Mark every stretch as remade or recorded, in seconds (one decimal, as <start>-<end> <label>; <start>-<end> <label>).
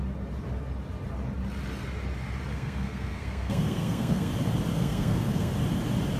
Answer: 0.0-2.5 recorded; 2.5-4.3 remade; 4.3-4.7 recorded; 4.7-5.5 remade; 5.5-6.2 recorded